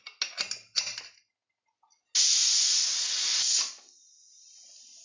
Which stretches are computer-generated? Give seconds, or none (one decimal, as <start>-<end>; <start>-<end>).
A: none